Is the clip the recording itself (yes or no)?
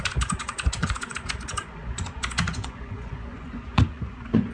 no